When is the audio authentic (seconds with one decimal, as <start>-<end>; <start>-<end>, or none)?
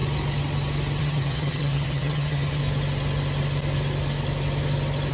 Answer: 0.0-1.0; 2.6-5.1